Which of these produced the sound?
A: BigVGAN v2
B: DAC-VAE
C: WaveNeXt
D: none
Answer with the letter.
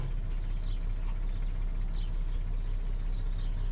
D